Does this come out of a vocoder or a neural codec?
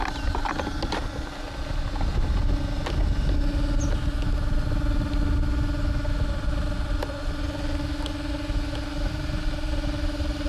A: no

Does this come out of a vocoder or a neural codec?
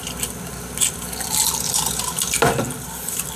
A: no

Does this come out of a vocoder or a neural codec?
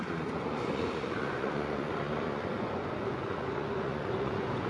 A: yes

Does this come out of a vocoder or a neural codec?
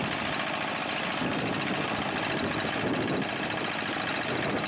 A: no